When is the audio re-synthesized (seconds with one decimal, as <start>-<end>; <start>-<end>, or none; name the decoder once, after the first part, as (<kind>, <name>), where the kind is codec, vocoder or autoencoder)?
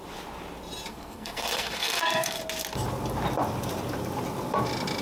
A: 0.9-2.4 (codec, SNAC)